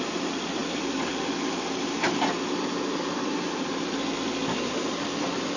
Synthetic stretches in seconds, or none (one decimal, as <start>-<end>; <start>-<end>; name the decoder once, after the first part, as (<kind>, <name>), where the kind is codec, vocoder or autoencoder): 0.6-1.1 (vocoder, BigVGAN v2)

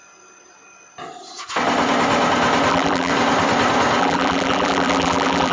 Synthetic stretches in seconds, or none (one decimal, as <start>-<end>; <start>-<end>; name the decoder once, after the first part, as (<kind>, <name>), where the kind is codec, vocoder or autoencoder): 2.7-3.1 (vocoder, BigVGAN v2); 4.0-5.5

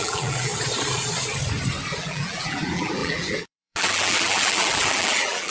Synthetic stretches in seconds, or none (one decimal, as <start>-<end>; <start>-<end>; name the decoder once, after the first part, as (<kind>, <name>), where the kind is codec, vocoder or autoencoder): 0.0-0.5 (vocoder, BigVGAN v2); 2.0-5.5

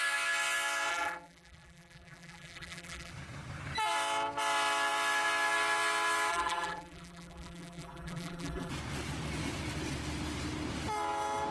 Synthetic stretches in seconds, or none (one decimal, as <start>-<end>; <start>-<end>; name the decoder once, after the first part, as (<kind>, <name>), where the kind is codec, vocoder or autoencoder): 0.9-3.1 (vocoder, BigVGAN v2); 6.3-8.7

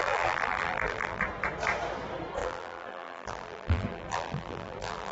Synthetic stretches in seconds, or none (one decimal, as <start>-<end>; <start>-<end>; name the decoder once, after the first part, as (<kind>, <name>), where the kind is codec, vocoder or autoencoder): 0.0-1.2 (vocoder, BigVGAN v2); 2.4-5.1

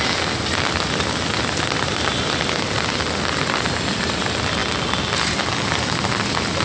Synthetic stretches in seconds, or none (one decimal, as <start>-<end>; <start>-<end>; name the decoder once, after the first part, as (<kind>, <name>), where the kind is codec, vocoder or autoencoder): none

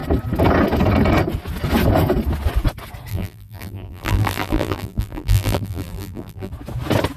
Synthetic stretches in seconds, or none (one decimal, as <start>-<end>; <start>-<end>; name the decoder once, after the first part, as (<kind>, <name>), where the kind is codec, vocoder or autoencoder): 3.1-6.5 (vocoder, BigVGAN v2)